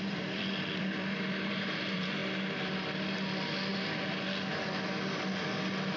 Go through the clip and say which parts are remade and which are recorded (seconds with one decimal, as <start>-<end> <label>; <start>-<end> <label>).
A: 0.0-2.2 remade; 2.2-6.0 recorded